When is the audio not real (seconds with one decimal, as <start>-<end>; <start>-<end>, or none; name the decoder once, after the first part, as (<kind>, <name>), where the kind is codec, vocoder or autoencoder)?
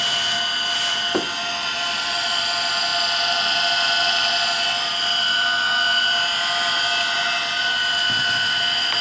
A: 1.6-2.4 (vocoder, BigVGAN v2)